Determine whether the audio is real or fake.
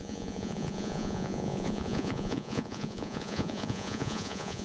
fake